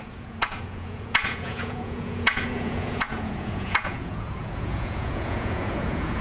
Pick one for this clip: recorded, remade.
remade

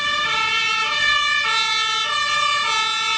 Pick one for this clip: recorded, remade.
recorded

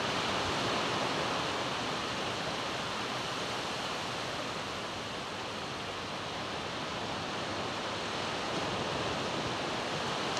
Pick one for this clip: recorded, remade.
recorded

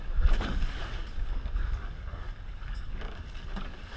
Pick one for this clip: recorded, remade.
remade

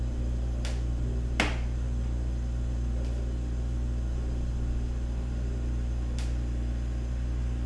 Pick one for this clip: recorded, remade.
recorded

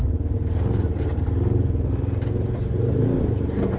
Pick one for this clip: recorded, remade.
recorded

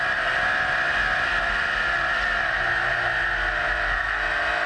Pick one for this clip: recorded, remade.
recorded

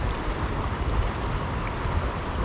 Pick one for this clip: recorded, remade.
recorded